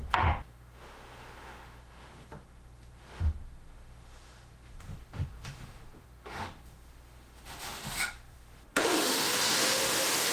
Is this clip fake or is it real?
fake